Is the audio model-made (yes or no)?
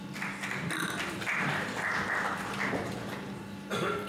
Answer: no